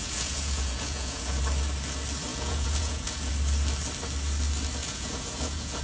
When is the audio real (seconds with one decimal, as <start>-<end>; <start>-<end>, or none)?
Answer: 1.4-2.3; 3.3-4.8